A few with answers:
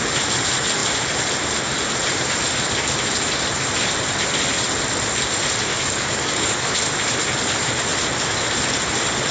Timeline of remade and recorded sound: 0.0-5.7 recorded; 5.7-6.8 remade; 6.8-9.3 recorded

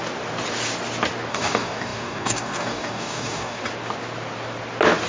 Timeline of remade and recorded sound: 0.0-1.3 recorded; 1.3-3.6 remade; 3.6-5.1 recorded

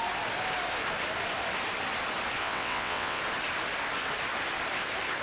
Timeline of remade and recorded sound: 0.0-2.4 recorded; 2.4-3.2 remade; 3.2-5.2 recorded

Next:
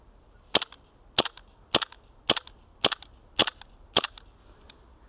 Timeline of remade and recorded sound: 0.0-5.1 recorded

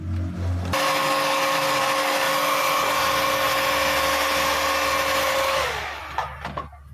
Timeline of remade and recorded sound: 0.0-1.0 recorded; 1.0-2.3 remade; 2.3-5.3 recorded; 5.3-6.0 remade; 6.0-6.9 recorded

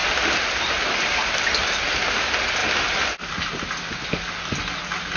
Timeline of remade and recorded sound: 0.0-5.2 recorded

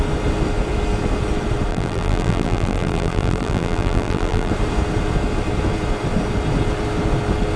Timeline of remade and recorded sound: 0.0-1.7 recorded; 1.7-4.5 remade; 4.5-7.6 recorded